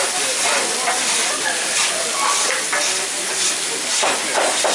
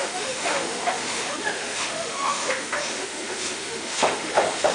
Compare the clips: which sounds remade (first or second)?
second